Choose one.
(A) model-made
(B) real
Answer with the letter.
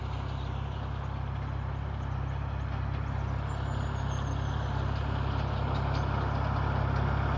B